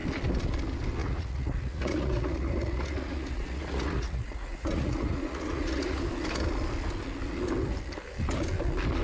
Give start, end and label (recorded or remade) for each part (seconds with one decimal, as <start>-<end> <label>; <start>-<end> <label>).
0.0-1.0 recorded; 1.0-6.0 remade; 6.0-9.0 recorded